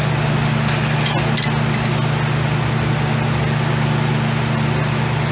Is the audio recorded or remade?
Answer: recorded